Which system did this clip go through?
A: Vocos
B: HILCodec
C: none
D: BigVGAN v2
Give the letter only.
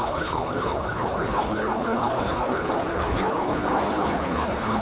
B